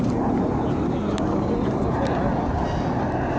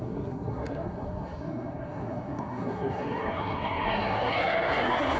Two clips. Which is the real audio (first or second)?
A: first